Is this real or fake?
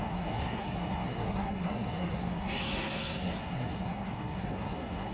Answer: fake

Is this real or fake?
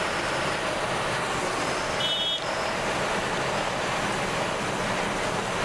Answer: real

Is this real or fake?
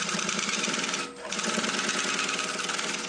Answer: real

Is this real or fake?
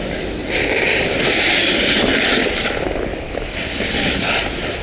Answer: real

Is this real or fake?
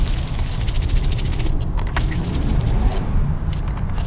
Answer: real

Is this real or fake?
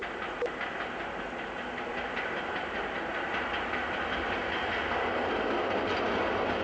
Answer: real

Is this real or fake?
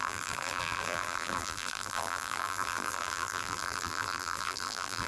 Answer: fake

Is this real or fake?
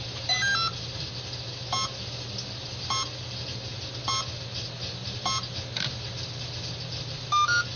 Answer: real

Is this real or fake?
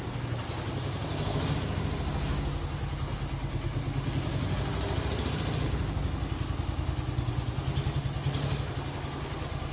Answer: real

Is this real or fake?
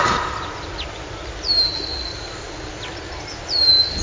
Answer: real